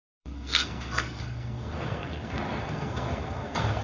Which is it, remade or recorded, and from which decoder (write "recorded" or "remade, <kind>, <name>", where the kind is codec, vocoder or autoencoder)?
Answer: remade, codec, SNAC